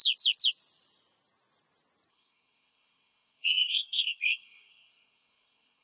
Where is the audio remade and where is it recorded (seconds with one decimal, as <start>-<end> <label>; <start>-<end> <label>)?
0.0-2.1 recorded; 2.1-5.8 remade